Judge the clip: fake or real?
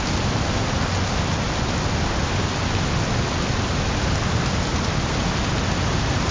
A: real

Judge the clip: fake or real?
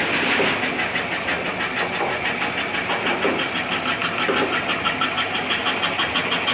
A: real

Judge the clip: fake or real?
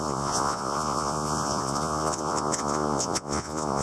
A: fake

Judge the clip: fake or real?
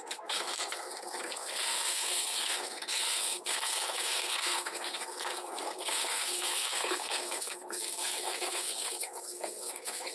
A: fake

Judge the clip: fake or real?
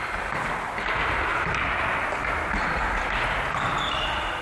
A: real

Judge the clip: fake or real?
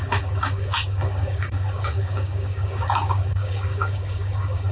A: fake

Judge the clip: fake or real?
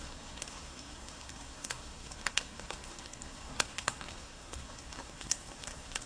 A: fake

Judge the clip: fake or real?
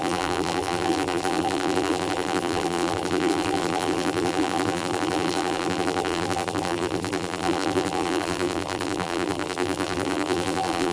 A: fake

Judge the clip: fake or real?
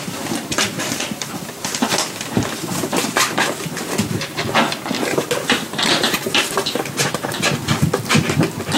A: fake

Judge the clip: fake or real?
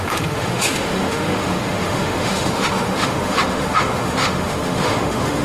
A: fake